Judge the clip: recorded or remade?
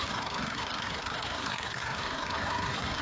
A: remade